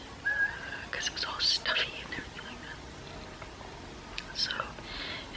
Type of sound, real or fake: real